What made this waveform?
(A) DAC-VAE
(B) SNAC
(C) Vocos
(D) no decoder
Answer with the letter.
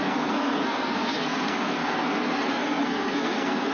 B